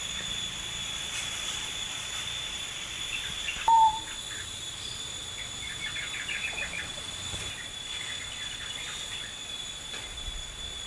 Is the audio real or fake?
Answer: fake